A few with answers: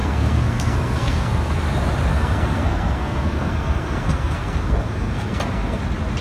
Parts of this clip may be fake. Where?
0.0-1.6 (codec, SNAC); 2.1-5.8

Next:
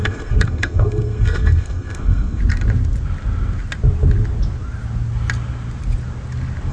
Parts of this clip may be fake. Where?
0.0-2.4 (codec, SNAC)

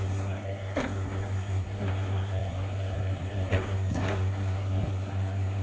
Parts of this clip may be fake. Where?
0.0-5.6 (codec, SNAC)

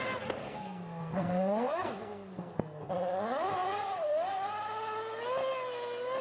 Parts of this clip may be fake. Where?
0.4-2.9 (codec, SNAC)

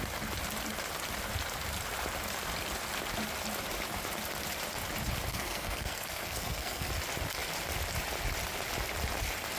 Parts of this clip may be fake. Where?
5.3-6.9 (codec, SNAC)

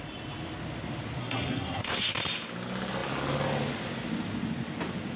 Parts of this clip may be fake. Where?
1.2-2.1 (codec, SNAC)

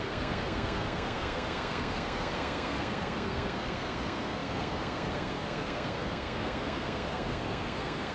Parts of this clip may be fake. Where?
0.0-8.1 (codec, SNAC)

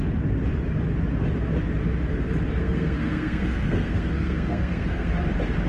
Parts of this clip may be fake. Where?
2.6-5.1 (codec, SNAC)